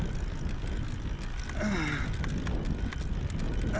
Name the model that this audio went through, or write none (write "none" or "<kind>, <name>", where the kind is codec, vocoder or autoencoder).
none